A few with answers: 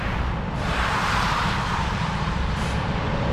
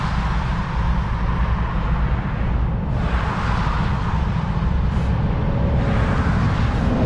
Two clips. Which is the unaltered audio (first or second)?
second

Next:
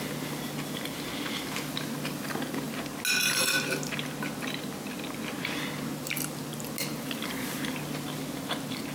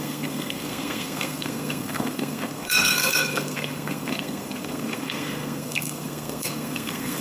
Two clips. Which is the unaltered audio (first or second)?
first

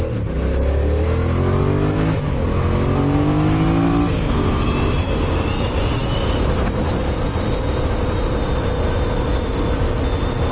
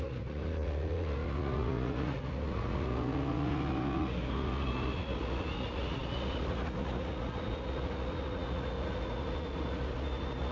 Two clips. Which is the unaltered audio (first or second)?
first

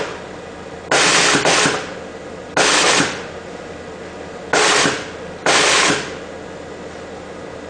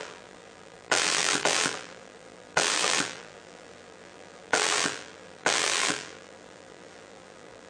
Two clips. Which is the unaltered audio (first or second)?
first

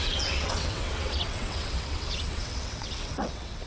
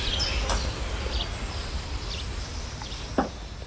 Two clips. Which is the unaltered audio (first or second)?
second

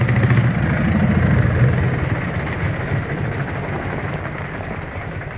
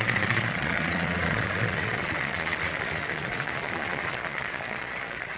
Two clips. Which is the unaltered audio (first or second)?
first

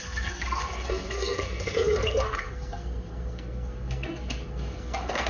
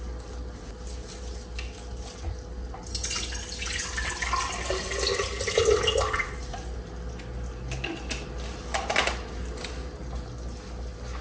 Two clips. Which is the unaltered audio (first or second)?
second